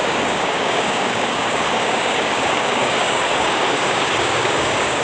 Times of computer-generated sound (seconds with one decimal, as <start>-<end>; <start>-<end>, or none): 0.0-5.0